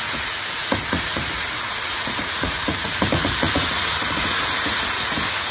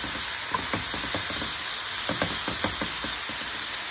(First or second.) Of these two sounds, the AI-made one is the first